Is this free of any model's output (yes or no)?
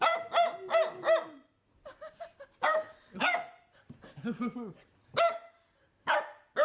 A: yes